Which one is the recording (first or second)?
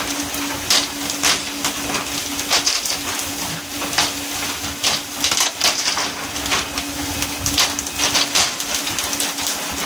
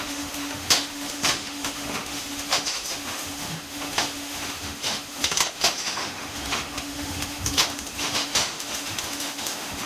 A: first